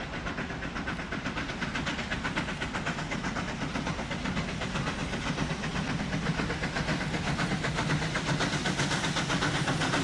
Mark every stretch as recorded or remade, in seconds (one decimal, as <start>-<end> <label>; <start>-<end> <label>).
0.0-10.0 recorded